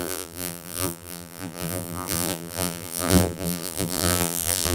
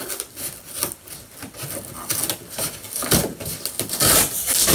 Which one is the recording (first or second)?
second